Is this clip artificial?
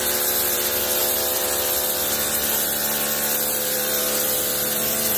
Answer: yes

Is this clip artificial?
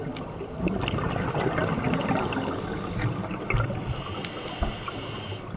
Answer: no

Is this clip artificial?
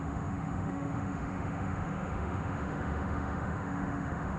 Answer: yes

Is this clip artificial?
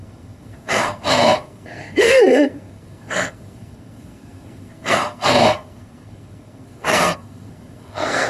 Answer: yes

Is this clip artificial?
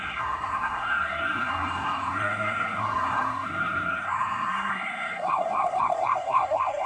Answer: yes